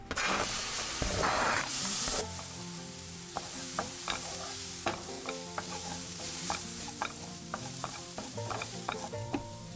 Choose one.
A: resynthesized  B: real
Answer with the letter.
A